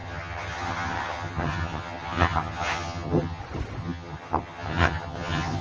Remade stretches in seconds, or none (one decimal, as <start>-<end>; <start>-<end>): 0.0-3.4; 3.8-5.6